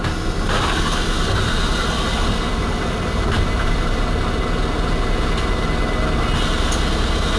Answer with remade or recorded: recorded